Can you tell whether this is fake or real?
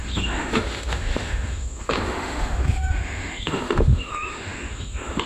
fake